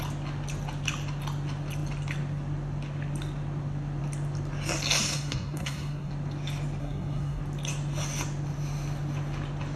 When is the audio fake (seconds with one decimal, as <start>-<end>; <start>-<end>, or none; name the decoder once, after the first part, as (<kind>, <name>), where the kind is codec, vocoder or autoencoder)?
5.1-6.1 (codec, SNAC); 6.8-7.4